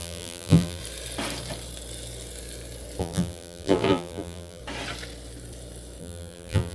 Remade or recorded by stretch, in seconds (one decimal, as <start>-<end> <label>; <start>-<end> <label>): 0.0-0.8 remade; 0.8-3.0 recorded; 3.0-4.6 remade; 4.6-6.0 recorded; 6.0-6.7 remade